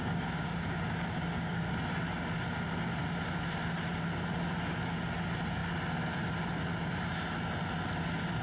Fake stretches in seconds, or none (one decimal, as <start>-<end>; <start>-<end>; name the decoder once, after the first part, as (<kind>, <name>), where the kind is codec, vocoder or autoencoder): 0.0-1.7 (codec, DAC)